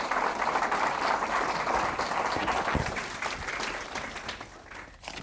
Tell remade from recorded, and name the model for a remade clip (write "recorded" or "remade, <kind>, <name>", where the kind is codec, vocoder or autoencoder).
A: recorded